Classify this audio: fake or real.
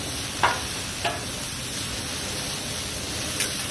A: real